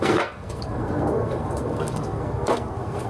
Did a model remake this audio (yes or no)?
yes